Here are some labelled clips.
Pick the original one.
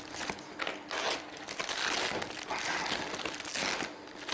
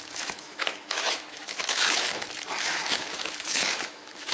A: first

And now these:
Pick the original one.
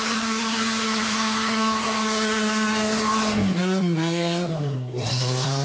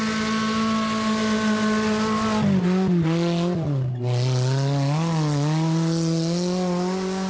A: second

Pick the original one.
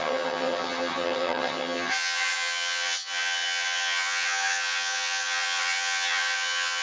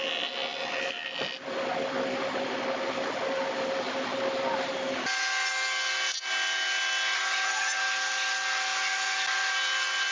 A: second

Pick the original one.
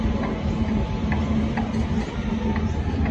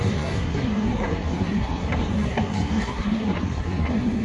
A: first